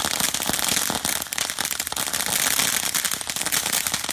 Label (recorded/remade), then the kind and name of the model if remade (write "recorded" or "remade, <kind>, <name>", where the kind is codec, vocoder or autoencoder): recorded